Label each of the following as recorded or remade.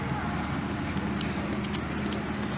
recorded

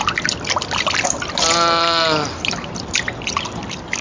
recorded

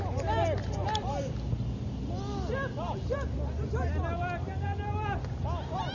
recorded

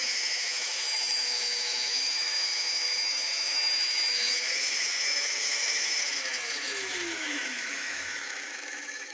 remade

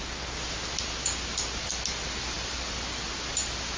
recorded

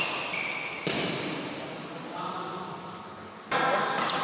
recorded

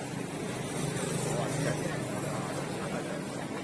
recorded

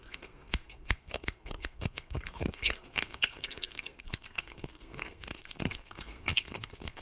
remade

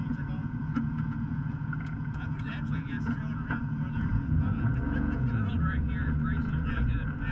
remade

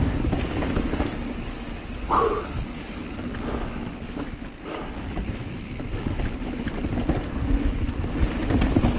recorded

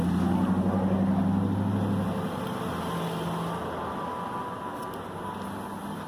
recorded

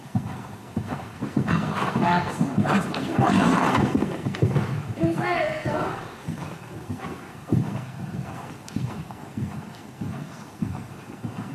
remade